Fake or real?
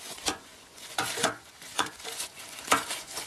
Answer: fake